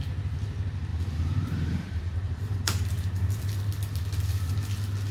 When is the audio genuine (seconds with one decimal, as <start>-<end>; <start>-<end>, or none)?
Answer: 0.0-0.9; 3.4-5.1